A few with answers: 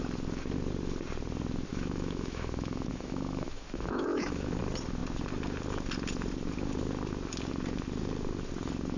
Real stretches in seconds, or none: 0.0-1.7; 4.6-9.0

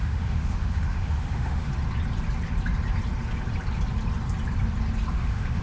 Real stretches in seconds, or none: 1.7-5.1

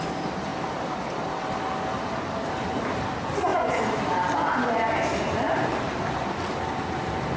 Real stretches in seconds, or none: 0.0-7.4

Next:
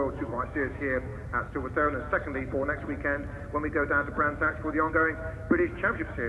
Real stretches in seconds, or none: 1.1-4.9

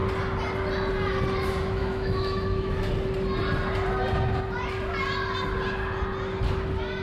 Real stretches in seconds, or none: 0.0-1.8; 2.9-7.0

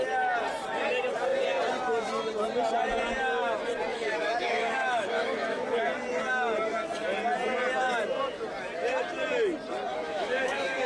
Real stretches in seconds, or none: 0.0-3.9; 5.8-9.9